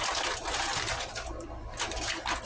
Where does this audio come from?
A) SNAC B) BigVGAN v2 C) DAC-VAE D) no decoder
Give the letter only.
D